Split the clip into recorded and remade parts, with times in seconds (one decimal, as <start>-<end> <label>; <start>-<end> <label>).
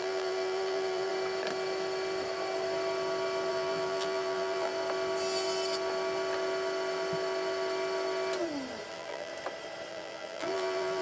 0.0-1.1 remade; 1.1-3.5 recorded; 3.5-4.7 remade; 4.7-8.9 recorded; 8.9-9.3 remade; 9.3-9.9 recorded; 9.9-11.0 remade